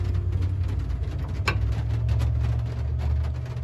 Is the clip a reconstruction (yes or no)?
no